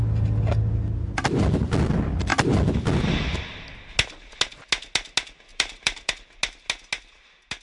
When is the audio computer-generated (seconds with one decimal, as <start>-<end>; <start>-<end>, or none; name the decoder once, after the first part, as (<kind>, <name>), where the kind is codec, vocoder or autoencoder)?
5.5-6.1 (vocoder, BigVGAN v2)